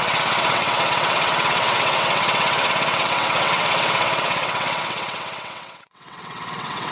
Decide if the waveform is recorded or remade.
remade